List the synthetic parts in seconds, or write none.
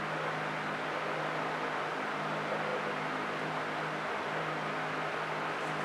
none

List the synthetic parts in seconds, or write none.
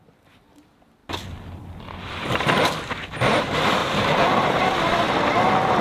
3.8-4.7 (vocoder, BigVGAN v2)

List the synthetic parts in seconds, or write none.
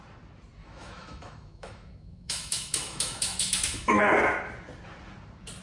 0.6-4.0 (autoencoder, DAC-VAE)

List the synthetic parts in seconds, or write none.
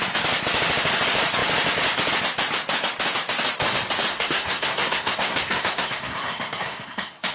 4.1-7.3 (codec, SNAC)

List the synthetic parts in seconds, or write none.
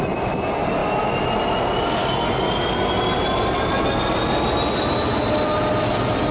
none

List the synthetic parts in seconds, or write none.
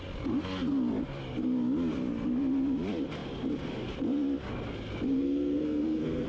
5.1-6.3 (codec, SNAC)